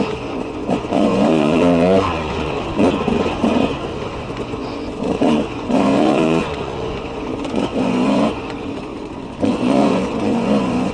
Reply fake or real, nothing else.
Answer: fake